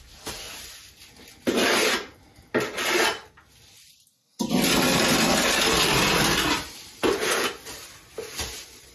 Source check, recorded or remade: recorded